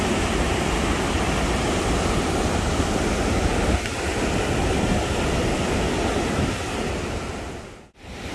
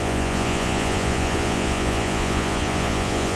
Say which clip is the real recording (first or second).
first